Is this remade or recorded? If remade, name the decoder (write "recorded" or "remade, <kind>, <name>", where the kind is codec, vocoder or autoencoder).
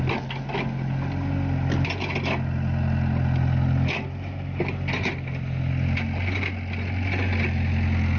recorded